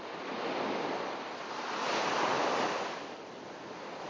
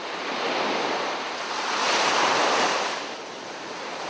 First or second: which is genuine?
first